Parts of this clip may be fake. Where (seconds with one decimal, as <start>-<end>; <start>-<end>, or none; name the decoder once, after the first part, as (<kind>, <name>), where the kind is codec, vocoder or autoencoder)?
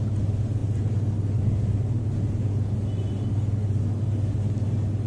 none